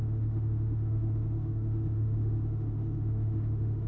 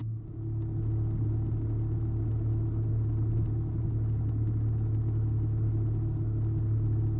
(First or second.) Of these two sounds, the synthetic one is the first